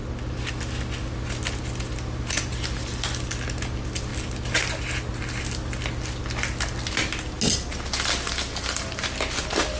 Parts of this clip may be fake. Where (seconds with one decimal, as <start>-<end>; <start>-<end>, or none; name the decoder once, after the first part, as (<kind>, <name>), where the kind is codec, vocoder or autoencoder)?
none